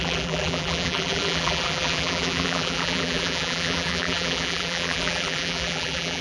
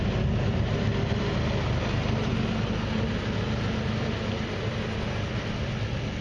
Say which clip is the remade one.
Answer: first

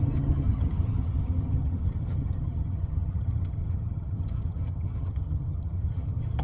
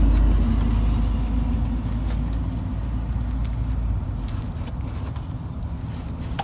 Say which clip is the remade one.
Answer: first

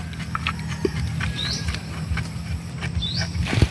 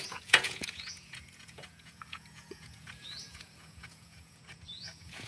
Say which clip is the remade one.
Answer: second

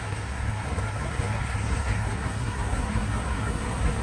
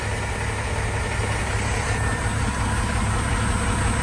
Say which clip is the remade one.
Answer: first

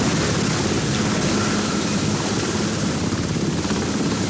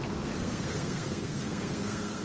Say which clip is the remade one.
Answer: second